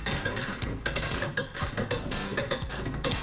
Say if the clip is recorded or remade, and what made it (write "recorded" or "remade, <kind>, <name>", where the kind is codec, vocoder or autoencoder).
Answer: remade, codec, SNAC